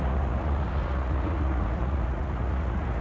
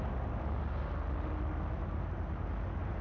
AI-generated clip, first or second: first